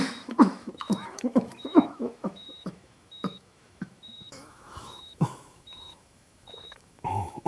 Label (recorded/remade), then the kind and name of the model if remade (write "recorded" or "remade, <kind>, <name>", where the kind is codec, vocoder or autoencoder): remade, autoencoder, DAC-VAE